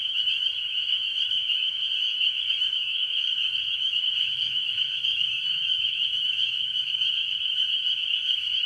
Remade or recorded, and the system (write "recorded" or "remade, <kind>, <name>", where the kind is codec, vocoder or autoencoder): remade, codec, DAC